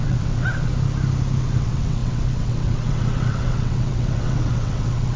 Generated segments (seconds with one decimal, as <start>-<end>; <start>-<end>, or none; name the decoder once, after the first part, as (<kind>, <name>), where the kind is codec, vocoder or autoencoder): 0.0-0.7 (vocoder, WaveNeXt); 1.4-5.2